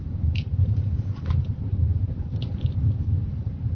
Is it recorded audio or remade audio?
remade